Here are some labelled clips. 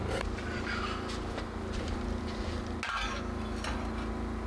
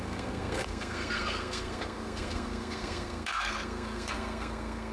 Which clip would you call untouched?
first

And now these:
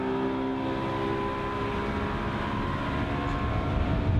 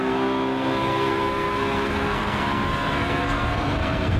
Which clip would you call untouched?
first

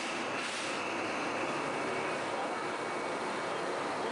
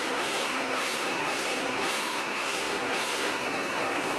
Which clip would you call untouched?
first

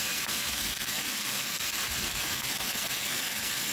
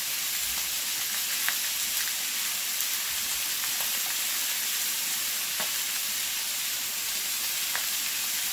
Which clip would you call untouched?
second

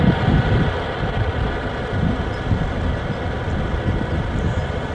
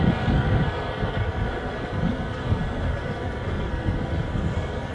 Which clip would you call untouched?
first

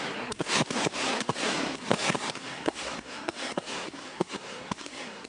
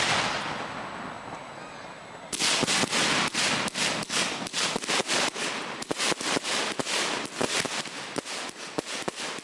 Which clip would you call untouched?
second